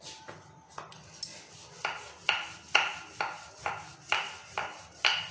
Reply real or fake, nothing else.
real